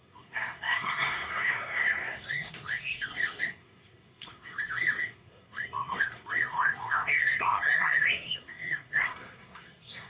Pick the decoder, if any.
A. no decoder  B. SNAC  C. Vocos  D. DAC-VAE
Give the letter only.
B